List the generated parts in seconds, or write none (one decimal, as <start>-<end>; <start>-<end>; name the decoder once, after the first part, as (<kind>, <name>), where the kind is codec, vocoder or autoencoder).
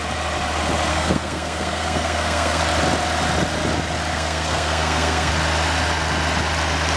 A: 0.9-2.6 (codec, SNAC); 4.1-5.3